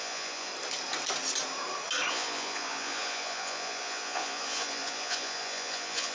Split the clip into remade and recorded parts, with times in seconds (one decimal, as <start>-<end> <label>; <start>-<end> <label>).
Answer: 0.0-0.5 remade; 0.5-2.1 recorded; 2.1-6.1 remade

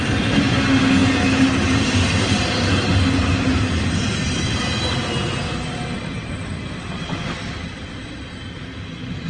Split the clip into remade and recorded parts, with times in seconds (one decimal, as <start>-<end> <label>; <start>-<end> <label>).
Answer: 0.0-9.3 recorded

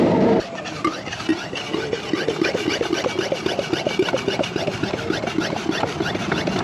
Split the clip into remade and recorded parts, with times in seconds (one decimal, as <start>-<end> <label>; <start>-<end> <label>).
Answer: 0.0-1.3 remade; 1.3-5.3 recorded; 5.3-6.6 remade

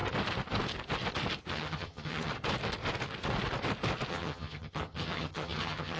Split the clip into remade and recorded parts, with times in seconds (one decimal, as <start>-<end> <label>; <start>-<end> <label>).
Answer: 0.0-1.5 recorded; 1.5-2.3 remade; 2.3-4.1 recorded; 4.1-6.0 remade

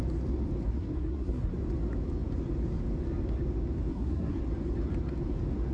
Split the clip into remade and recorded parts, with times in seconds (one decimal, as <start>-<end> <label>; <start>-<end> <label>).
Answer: 0.0-0.6 recorded; 0.6-1.5 remade; 1.5-3.9 recorded; 3.9-4.4 remade; 4.4-5.7 recorded

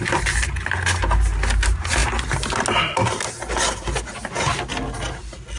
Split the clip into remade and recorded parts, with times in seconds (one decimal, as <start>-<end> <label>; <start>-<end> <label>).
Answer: 0.0-5.6 recorded

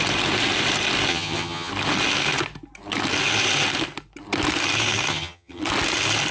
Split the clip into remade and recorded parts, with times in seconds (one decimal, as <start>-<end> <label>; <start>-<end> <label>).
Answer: 0.0-1.1 recorded; 1.1-1.7 remade; 1.7-5.1 recorded; 5.1-5.6 remade; 5.6-6.3 recorded